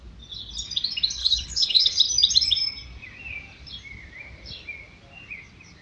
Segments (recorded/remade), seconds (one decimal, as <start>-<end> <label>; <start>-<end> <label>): 0.0-1.2 recorded; 1.2-2.0 remade; 2.0-5.8 recorded